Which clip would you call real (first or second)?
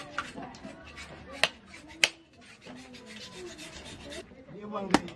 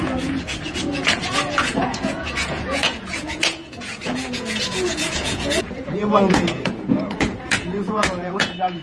first